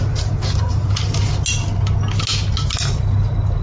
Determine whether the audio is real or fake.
real